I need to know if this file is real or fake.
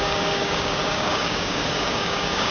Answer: fake